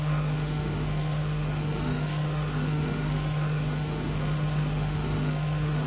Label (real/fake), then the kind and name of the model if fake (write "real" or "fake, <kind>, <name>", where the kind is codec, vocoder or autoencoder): fake, autoencoder, DAC-VAE